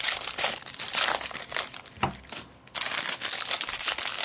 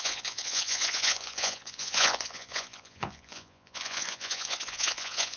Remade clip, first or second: second